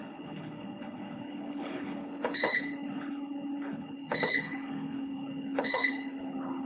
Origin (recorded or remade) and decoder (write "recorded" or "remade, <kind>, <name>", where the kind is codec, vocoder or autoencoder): remade, codec, HILCodec